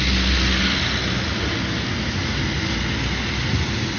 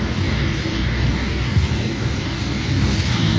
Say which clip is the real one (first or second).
first